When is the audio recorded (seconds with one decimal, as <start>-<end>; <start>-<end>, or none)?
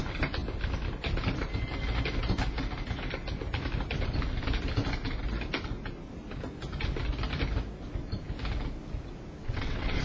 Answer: 0.0-9.4